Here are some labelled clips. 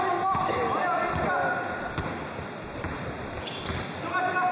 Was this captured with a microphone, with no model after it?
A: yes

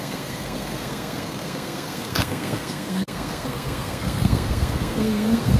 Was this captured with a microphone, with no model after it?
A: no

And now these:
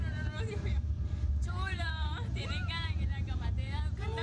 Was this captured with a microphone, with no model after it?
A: no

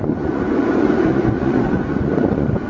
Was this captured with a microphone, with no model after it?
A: no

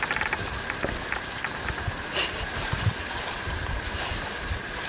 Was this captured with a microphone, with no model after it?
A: no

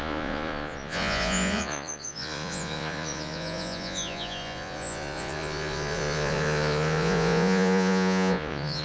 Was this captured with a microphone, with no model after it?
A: no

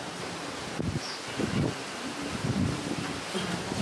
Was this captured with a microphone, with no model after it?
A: yes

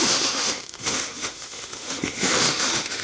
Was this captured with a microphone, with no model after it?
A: no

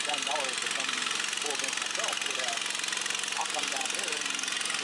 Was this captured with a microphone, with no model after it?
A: yes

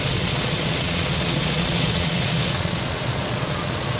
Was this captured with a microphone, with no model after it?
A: no